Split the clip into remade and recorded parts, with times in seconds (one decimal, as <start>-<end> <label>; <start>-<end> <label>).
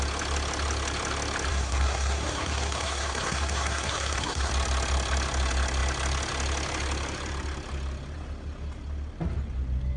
0.0-1.5 recorded; 1.5-4.5 remade; 4.5-10.0 recorded